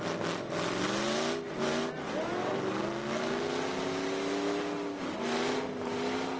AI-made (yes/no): no